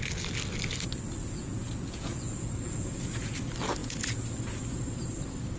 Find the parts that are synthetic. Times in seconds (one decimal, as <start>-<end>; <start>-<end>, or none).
1.2-3.4; 3.8-4.6